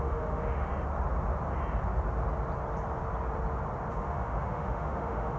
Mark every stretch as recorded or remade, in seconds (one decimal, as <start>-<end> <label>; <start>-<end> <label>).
0.0-0.7 remade; 0.7-3.9 recorded; 3.9-5.4 remade